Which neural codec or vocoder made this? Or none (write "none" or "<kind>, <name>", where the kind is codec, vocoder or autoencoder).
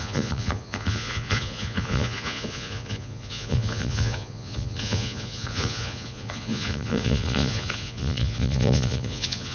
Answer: vocoder, Vocos